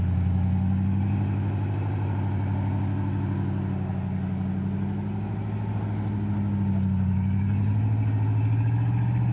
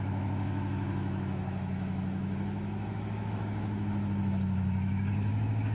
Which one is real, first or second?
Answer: first